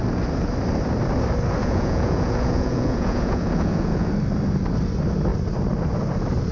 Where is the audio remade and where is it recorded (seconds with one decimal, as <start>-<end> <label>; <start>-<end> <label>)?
0.0-1.6 recorded; 1.6-4.1 remade; 4.1-6.5 recorded